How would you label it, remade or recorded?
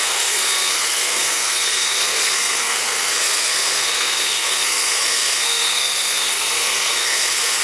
remade